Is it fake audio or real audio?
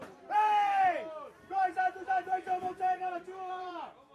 fake